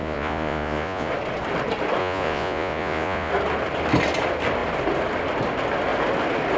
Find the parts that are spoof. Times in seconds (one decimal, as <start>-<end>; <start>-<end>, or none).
0.0-1.1; 2.0-3.3